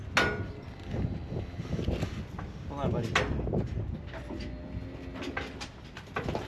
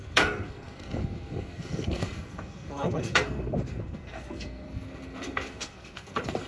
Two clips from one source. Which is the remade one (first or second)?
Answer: second